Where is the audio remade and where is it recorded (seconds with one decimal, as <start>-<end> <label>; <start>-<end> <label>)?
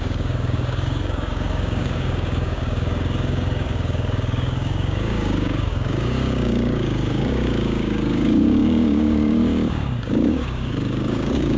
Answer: 0.0-11.6 remade